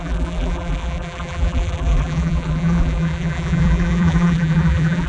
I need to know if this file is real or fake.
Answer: fake